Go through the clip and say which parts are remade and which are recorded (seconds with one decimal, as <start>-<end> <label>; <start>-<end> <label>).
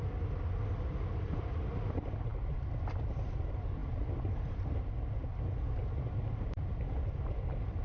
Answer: 0.0-7.8 recorded